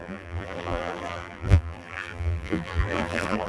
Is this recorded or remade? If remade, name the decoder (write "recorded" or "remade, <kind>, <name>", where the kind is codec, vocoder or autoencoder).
remade, vocoder, BigVGAN v2